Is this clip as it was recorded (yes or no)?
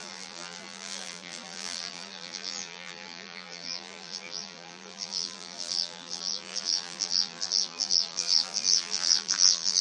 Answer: no